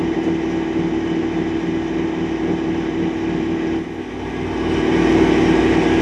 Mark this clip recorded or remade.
recorded